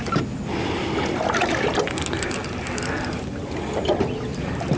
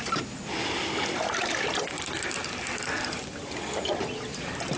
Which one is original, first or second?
first